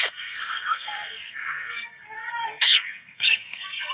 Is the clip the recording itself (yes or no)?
no